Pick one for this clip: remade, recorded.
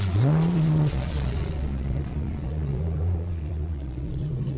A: remade